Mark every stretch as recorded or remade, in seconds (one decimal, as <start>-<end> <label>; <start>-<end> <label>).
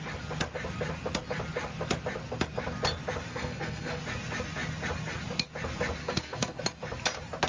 0.0-3.3 recorded; 3.3-4.0 remade; 4.0-6.0 recorded; 6.0-6.6 remade; 6.6-7.5 recorded